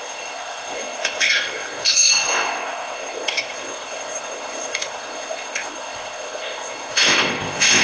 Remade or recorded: remade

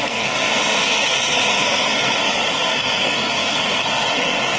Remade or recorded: remade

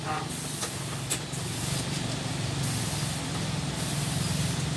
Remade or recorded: recorded